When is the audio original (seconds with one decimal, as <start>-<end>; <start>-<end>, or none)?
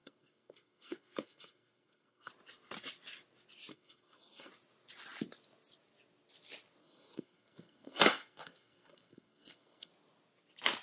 2.3-3.7; 4.5-6.8; 9.9-10.8